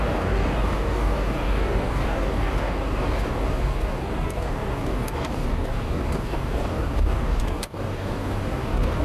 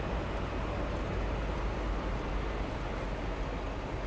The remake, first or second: first